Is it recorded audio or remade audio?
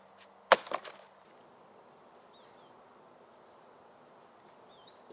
recorded